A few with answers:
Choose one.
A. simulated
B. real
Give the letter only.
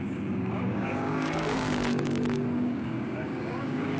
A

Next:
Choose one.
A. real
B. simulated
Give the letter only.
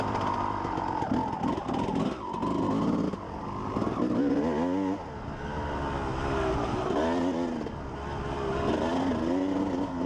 A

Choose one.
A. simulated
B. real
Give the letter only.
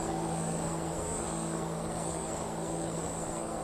A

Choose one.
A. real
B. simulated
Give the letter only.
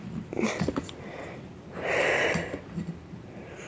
B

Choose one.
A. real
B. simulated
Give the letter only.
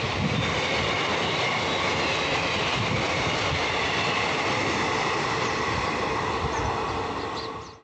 A